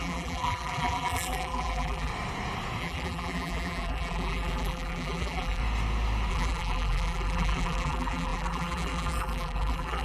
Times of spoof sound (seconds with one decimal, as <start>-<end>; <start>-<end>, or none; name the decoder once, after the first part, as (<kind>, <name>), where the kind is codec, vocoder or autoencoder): 0.0-2.1 (vocoder, BigVGAN v2); 2.8-5.6; 6.3-10.0